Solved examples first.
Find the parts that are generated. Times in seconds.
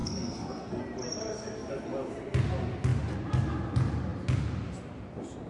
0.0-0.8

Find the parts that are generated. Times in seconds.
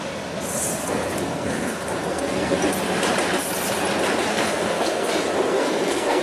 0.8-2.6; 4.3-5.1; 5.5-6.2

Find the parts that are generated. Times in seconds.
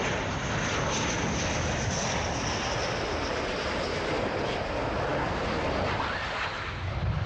none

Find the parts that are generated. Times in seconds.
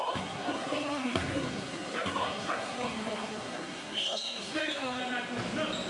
0.0-5.0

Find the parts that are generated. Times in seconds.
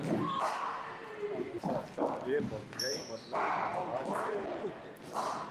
none